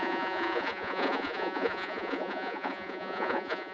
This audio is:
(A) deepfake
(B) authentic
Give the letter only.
A